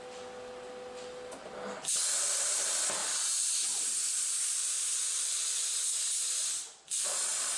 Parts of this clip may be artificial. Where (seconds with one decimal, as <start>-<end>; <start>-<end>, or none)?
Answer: 3.0-5.9